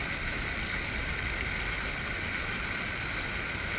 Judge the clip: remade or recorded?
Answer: recorded